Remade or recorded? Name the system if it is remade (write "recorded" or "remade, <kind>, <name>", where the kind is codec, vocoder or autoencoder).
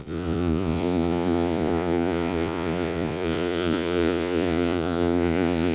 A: remade, vocoder, Vocos